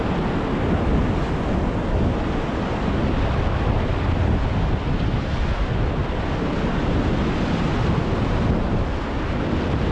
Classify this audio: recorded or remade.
recorded